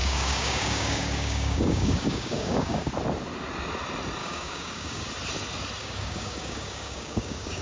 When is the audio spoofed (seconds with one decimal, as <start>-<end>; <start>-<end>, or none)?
0.0-2.9; 4.2-5.1; 5.8-7.6